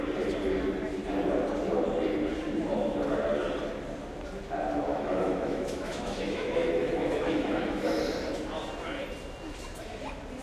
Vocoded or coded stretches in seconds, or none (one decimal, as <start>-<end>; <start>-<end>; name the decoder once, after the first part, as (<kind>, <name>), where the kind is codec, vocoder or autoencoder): 4.9-8.0 (autoencoder, DAC-VAE)